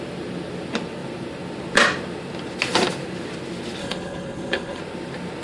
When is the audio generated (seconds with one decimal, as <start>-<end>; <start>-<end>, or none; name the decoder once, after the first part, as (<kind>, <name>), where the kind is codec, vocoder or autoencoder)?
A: 3.8-4.8 (codec, HILCodec)